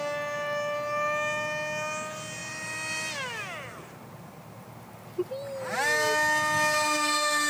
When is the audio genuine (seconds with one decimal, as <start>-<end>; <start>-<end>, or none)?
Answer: 0.0-7.5